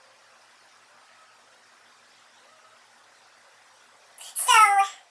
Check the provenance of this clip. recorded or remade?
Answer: recorded